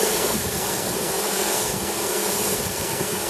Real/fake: fake